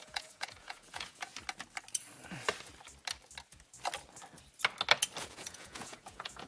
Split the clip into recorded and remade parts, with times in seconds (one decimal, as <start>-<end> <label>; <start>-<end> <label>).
0.0-1.3 remade; 1.3-5.2 recorded; 5.2-6.5 remade

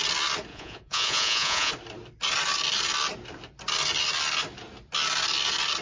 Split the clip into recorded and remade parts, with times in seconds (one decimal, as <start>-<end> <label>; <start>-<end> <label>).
0.0-0.5 recorded; 0.5-1.7 remade; 1.7-5.8 recorded

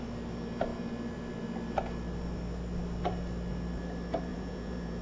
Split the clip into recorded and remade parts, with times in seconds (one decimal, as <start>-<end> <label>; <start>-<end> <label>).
0.0-4.3 recorded; 4.3-5.0 remade